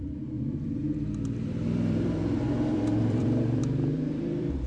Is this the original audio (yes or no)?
no